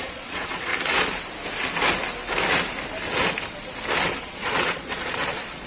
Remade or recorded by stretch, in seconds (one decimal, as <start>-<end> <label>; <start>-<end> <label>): 0.0-0.7 remade; 0.7-4.1 recorded; 4.1-5.7 remade